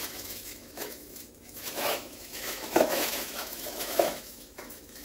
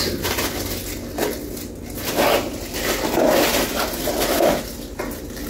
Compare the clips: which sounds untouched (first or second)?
second